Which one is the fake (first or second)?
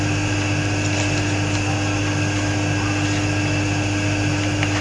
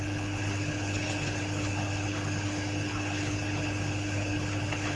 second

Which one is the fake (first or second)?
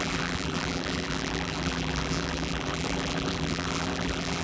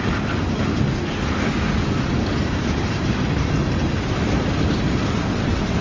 first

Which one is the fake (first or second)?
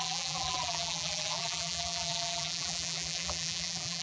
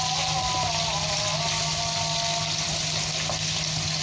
first